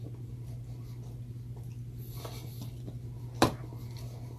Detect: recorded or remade recorded